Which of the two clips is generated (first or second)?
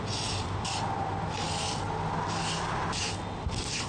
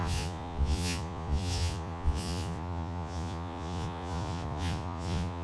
second